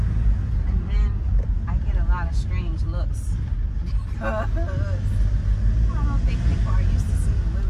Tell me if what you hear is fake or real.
real